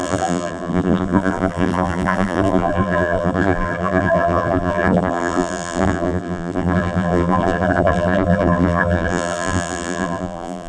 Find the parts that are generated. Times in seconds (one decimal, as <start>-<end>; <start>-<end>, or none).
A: 0.0-10.7